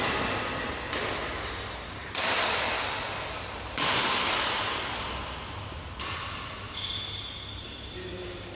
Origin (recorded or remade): recorded